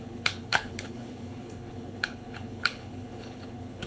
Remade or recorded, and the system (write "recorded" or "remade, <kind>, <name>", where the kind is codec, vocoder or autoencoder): remade, codec, HILCodec